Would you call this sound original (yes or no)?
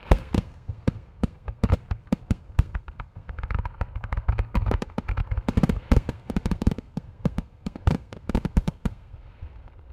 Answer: no